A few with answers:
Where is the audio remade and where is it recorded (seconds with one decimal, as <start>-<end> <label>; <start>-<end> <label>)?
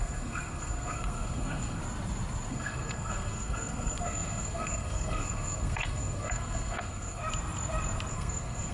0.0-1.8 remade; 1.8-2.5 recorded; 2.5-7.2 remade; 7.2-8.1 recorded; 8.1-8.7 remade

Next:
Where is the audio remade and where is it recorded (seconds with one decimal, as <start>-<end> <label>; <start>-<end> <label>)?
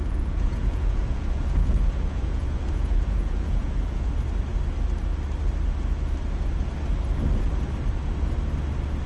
0.0-4.1 remade; 4.1-9.1 recorded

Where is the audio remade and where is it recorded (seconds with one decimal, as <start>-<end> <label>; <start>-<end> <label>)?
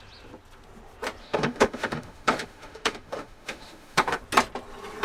0.0-1.2 recorded; 1.2-4.2 remade; 4.2-5.0 recorded